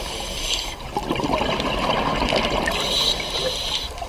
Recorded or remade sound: recorded